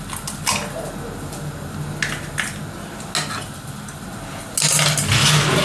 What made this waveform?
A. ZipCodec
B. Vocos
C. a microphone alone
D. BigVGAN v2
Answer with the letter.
C